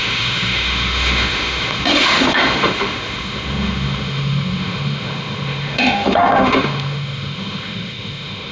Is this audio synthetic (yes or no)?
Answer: yes